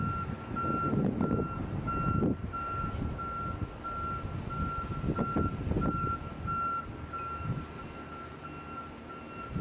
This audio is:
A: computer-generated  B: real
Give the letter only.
B